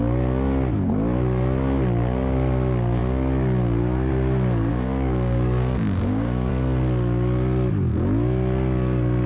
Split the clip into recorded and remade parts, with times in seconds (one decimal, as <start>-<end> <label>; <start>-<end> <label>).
0.0-4.7 recorded; 4.7-6.5 remade; 6.5-9.3 recorded